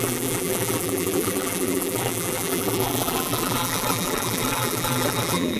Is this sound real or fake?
fake